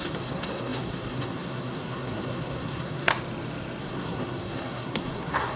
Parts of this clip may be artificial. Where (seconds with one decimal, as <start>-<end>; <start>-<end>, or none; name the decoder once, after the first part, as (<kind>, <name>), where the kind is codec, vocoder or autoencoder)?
0.0-3.1 (codec, SNAC); 3.8-5.6